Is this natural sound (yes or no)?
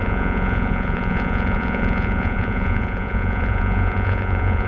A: no